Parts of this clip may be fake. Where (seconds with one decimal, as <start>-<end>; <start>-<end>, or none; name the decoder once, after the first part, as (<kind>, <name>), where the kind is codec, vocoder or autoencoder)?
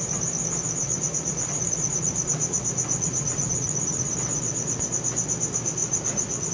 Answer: 0.8-4.1 (vocoder, Vocos); 5.8-6.5